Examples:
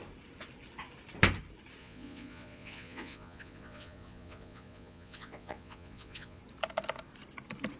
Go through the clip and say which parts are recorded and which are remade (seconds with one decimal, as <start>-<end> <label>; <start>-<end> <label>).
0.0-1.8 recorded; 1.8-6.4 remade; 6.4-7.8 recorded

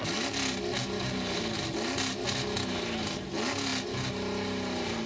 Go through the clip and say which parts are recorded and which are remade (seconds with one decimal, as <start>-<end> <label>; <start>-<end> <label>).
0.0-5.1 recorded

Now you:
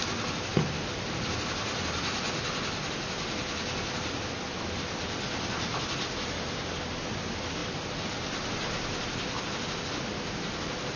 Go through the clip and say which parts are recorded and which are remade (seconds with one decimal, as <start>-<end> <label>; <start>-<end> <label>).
0.0-11.0 recorded

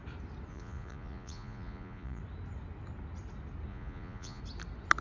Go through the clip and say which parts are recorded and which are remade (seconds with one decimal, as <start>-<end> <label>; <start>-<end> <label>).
0.0-0.5 recorded; 0.5-2.2 remade; 2.2-3.7 recorded; 3.7-4.4 remade; 4.4-5.0 recorded

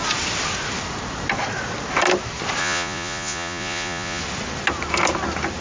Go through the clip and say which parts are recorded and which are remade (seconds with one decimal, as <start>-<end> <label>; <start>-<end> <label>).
0.0-2.6 recorded; 2.6-4.2 remade; 4.2-5.6 recorded

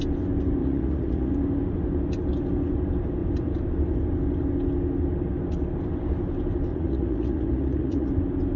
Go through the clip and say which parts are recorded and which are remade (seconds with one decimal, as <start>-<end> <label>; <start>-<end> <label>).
0.0-0.6 recorded; 0.6-1.3 remade; 1.3-6.7 recorded; 6.7-8.1 remade; 8.1-8.6 recorded

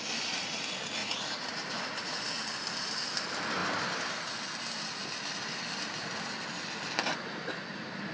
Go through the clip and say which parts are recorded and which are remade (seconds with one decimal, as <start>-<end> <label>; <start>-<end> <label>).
0.0-1.0 recorded; 1.0-2.2 remade; 2.2-8.1 recorded